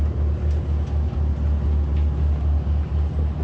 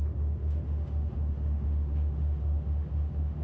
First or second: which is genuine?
first